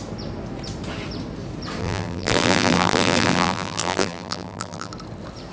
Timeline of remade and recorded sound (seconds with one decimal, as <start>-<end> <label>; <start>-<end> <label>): 0.0-1.8 recorded; 1.8-4.9 remade; 4.9-5.5 recorded